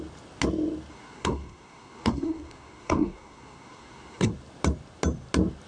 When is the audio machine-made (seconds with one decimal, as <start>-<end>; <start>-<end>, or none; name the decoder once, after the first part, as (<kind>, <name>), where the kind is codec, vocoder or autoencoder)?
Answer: 0.9-4.3 (codec, SNAC)